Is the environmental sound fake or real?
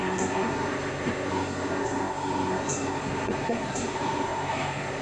fake